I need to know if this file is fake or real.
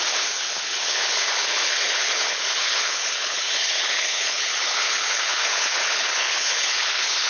fake